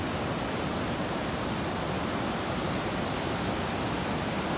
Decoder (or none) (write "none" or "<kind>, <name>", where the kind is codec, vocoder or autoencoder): none